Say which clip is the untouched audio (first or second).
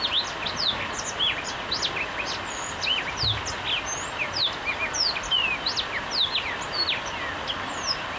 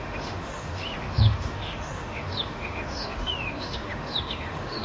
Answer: first